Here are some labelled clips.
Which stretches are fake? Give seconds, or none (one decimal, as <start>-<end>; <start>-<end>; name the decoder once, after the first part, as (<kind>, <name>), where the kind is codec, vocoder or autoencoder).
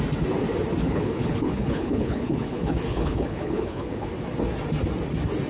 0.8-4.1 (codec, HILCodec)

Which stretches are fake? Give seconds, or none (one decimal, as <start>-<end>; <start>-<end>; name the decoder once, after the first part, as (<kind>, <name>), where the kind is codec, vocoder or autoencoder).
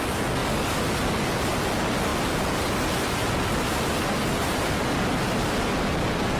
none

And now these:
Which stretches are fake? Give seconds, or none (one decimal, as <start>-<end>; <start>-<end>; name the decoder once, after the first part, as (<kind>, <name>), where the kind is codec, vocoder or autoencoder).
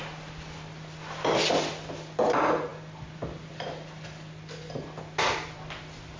none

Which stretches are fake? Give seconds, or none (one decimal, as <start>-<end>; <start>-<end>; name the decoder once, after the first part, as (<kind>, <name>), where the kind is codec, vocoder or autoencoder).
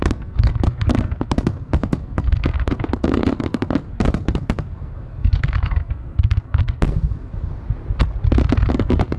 0.0-7.5 (codec, SNAC); 8.7-9.2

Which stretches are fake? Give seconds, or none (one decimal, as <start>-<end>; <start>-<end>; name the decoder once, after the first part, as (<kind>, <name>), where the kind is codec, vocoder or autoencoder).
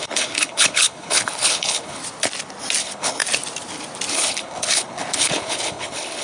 0.0-2.0 (codec, HILCodec); 2.8-3.2; 4.1-6.2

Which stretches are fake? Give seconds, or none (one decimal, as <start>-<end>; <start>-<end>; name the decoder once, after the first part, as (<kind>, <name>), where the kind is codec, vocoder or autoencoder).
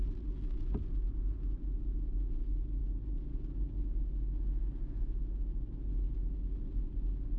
none